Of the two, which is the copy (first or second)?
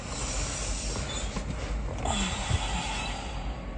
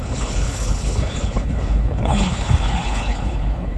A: second